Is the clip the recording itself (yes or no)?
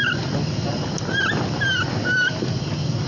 yes